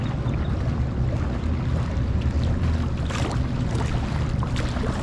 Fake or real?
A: real